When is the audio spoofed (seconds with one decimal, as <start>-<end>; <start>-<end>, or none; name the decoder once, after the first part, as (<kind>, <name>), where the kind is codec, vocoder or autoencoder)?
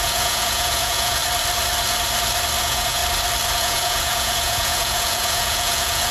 0.0-1.2 (vocoder, Vocos); 2.6-3.0; 3.6-6.1